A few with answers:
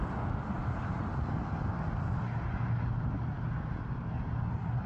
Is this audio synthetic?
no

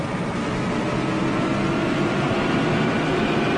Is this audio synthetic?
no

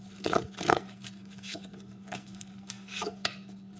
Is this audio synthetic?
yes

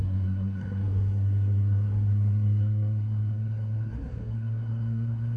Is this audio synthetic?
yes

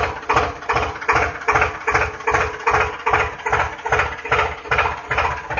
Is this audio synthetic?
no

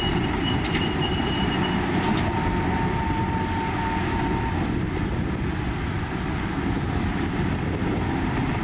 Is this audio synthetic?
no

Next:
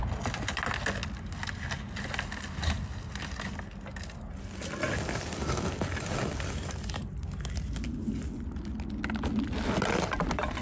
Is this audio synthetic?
no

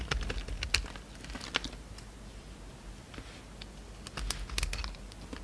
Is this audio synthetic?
no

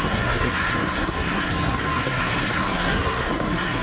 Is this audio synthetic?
yes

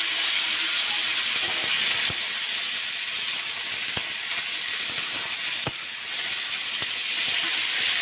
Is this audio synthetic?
no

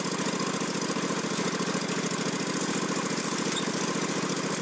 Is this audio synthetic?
no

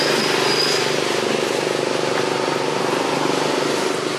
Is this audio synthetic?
no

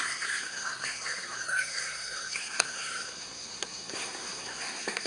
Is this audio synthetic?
yes